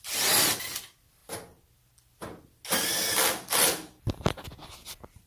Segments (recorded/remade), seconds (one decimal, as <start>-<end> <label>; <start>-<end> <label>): 0.0-5.3 recorded